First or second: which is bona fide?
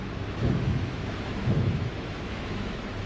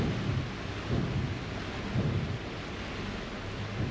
second